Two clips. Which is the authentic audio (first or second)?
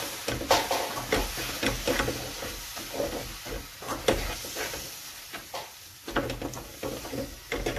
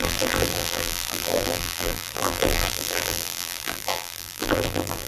first